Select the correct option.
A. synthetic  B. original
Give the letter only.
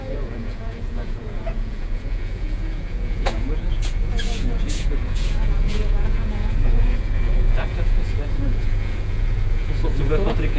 A